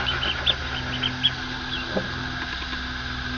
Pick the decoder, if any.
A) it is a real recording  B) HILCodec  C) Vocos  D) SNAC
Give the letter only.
A